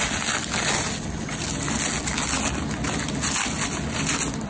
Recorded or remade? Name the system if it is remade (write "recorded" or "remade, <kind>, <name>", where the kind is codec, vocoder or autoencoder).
recorded